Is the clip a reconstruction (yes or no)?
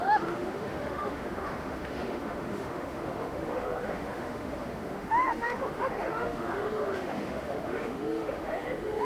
yes